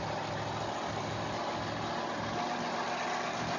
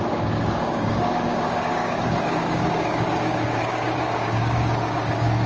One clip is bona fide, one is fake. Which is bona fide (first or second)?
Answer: first